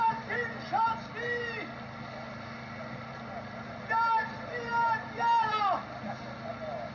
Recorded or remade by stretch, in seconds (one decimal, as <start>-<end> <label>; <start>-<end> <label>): 0.0-6.9 recorded